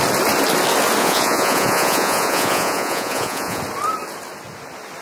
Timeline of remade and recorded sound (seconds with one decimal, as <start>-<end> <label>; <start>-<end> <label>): 0.0-1.0 recorded; 1.0-3.6 remade; 3.6-5.0 recorded